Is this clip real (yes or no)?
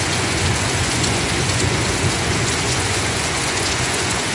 no